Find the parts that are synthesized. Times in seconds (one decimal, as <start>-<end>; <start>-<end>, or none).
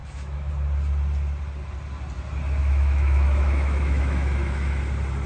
0.0-0.5; 2.6-4.8